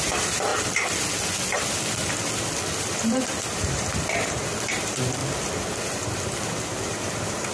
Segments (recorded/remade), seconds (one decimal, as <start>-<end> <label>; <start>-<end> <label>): 0.0-0.5 remade; 0.5-2.8 recorded; 2.8-5.2 remade; 5.2-6.8 recorded; 6.8-7.5 remade